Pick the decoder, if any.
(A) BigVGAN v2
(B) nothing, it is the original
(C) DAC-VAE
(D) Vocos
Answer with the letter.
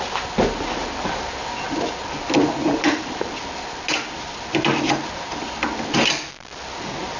B